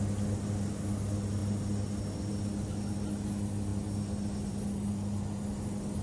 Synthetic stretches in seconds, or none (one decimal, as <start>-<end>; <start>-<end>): none